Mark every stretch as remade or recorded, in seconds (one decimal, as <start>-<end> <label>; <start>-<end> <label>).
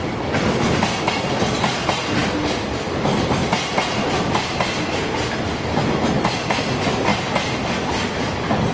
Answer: 0.0-7.1 recorded; 7.1-7.7 remade; 7.7-8.7 recorded